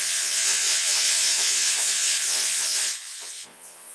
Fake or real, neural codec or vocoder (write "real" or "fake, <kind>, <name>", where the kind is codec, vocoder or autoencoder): fake, vocoder, Vocos